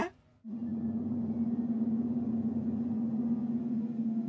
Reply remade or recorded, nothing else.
remade